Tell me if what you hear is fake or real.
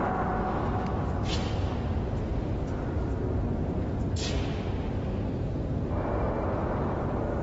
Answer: real